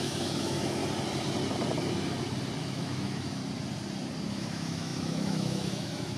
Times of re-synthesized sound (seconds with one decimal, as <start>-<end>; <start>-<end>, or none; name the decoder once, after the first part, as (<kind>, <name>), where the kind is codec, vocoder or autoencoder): 0.0-0.8 (autoencoder, DAC-VAE); 2.6-3.4; 4.3-6.2